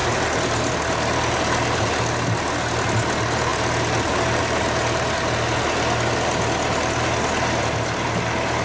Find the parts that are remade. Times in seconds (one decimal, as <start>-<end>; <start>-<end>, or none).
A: none